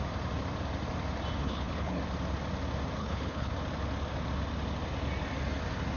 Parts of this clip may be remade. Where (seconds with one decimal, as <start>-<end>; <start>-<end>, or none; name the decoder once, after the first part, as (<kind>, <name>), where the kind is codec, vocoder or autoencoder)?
1.4-2.0 (codec, HILCodec); 3.0-3.5